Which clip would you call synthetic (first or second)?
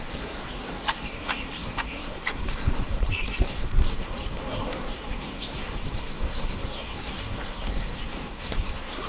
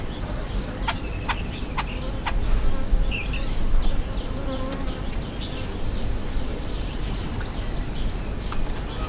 first